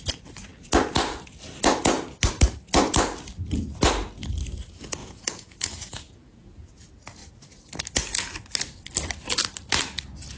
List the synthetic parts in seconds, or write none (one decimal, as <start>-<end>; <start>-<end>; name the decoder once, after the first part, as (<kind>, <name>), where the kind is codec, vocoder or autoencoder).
5.0-6.7 (vocoder, Vocos)